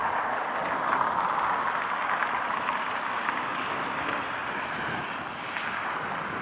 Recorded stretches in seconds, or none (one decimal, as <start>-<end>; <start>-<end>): 0.5-2.2; 2.7-6.4